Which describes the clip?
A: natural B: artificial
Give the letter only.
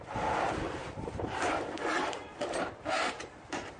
B